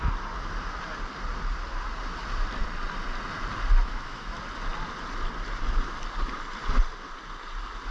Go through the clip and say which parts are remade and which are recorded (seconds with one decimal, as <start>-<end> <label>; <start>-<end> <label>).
0.0-3.8 recorded; 3.8-4.3 remade; 4.3-7.9 recorded